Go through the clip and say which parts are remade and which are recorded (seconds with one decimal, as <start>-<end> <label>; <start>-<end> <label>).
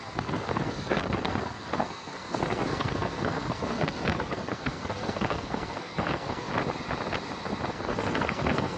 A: 0.0-6.5 remade; 6.5-7.7 recorded; 7.7-8.8 remade